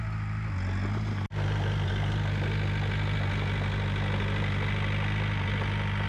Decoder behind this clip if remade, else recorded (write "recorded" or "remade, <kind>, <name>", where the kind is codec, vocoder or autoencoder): recorded